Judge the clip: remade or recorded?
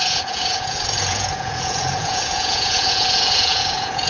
remade